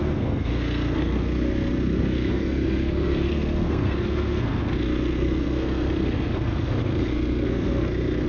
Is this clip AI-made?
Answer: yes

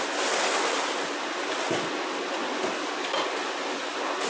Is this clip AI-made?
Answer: no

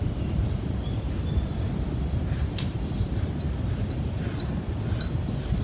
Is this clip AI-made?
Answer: no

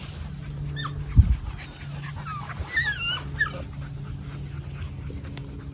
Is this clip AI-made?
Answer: no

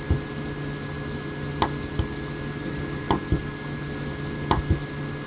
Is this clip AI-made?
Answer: no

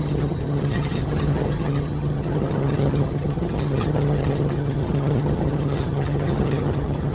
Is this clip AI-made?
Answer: yes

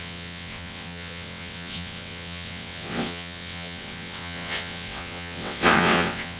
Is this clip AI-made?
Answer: yes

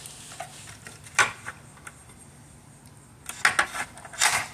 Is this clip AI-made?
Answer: no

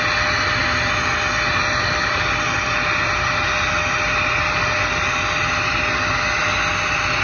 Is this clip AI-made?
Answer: no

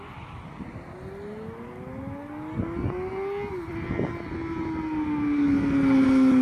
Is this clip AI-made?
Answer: no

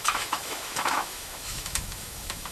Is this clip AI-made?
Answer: yes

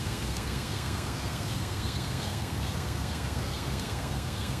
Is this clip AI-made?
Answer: yes